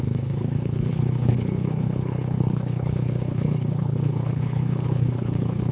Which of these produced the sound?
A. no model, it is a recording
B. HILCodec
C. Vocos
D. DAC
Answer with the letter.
B